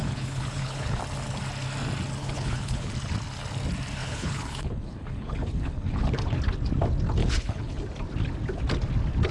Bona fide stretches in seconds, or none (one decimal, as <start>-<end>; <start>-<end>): 1.0-2.2; 2.9-4.0; 6.1-7.2; 7.8-9.3